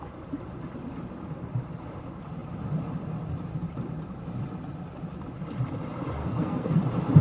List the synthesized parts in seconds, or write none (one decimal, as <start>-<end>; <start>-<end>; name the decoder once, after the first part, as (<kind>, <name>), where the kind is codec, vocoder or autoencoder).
6.2-6.8 (codec, SNAC)